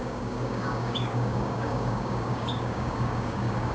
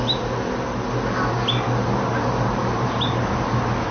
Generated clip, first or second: first